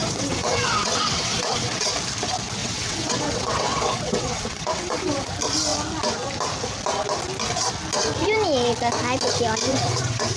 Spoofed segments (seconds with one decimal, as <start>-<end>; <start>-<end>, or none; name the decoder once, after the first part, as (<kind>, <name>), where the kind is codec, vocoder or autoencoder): 0.0-1.9 (vocoder, WaveNeXt); 2.6-5.3; 9.7-10.4